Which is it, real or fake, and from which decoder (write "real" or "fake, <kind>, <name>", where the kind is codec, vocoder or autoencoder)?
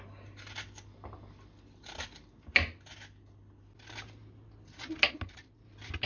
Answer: real